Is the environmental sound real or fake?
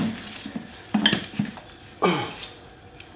real